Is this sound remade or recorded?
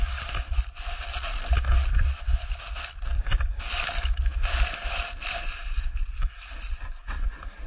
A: recorded